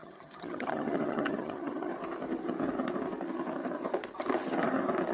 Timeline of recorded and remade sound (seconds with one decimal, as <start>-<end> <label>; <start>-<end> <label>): 0.0-1.9 remade; 1.9-5.1 recorded